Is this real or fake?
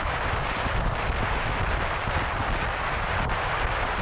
real